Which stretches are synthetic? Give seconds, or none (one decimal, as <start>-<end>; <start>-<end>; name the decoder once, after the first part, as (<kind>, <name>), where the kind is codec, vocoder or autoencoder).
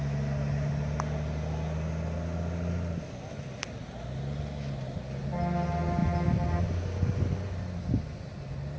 none